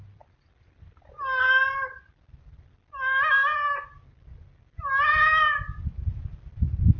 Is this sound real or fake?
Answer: real